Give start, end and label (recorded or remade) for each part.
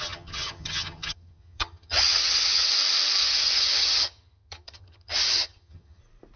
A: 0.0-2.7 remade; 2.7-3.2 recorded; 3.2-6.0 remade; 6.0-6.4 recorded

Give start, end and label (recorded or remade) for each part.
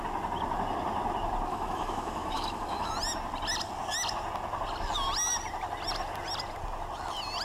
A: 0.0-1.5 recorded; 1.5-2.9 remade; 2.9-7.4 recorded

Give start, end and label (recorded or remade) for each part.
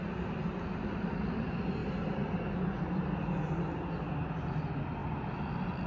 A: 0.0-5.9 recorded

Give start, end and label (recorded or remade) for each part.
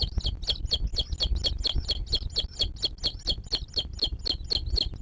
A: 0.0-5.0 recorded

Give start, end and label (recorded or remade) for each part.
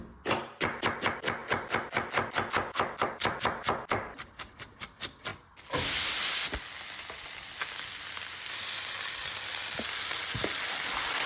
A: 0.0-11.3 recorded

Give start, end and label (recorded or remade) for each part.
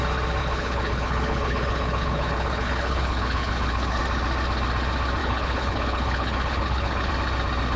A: 0.0-0.4 recorded; 0.4-4.0 remade; 4.0-5.2 recorded; 5.2-7.1 remade; 7.1-7.8 recorded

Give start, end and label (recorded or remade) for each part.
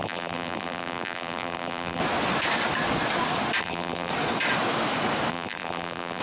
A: 0.0-2.0 remade; 2.0-3.6 recorded; 3.6-4.1 remade; 4.1-5.3 recorded; 5.3-6.2 remade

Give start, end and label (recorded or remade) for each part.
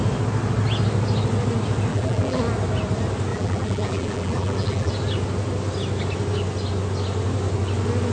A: 0.0-1.9 recorded; 1.9-2.4 remade; 2.4-3.3 recorded; 3.3-4.9 remade; 4.9-8.1 recorded